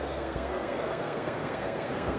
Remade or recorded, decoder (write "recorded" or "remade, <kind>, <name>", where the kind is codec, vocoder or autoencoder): remade, codec, SNAC